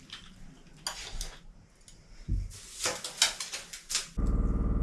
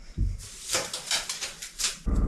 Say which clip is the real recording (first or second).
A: first